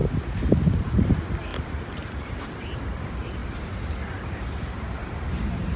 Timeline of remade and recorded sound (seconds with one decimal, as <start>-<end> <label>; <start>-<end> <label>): 0.0-1.5 recorded; 1.5-3.0 remade; 3.0-3.4 recorded; 3.4-5.8 remade